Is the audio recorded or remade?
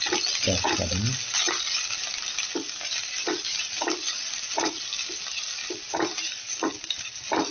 recorded